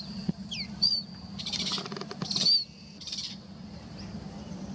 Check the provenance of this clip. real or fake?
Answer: real